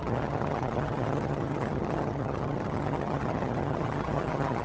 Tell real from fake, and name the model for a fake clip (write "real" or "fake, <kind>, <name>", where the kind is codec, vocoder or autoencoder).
fake, vocoder, HiFi-GAN